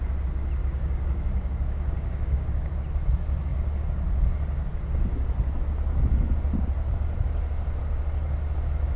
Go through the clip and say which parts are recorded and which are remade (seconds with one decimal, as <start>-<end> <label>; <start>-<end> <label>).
0.0-0.6 recorded; 0.6-2.7 remade; 2.7-9.0 recorded